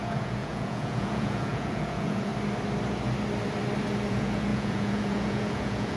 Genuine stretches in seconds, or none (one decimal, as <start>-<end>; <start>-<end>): 2.3-4.1